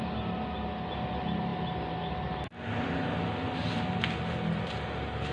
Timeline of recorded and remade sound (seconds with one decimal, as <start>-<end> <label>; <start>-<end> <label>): 0.0-5.3 recorded